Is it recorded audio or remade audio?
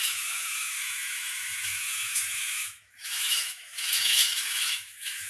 remade